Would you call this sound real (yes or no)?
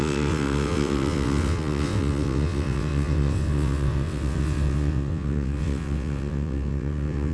no